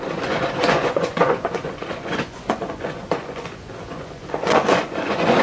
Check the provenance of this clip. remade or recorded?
remade